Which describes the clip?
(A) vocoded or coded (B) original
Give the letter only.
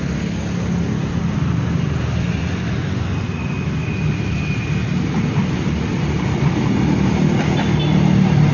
B